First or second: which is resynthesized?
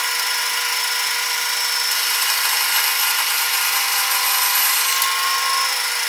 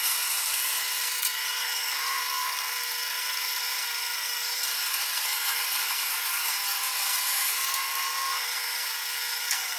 second